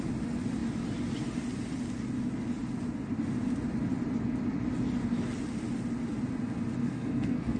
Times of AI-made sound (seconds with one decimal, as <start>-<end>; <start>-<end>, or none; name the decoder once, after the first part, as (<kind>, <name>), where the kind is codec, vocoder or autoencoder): 6.8-7.6 (codec, SNAC)